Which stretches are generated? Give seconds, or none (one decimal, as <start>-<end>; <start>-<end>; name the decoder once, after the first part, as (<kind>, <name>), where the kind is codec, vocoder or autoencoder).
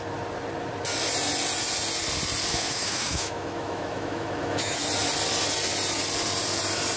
2.5-4.8 (autoencoder, DAC-VAE)